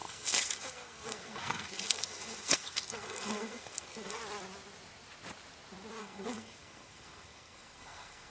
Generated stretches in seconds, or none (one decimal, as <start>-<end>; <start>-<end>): 0.0-4.2; 6.0-8.3